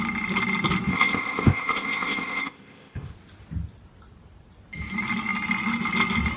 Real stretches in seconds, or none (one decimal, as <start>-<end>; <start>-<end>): 0.0-0.9; 3.1-6.4